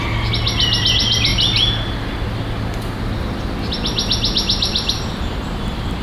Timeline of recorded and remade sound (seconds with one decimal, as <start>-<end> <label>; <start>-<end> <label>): 0.0-1.3 remade; 1.3-4.9 recorded; 4.9-6.0 remade